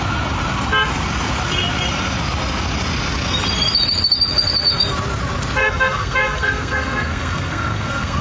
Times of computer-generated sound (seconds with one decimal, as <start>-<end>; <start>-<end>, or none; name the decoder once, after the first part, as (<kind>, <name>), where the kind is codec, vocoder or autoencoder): 5.6-8.2 (codec, SNAC)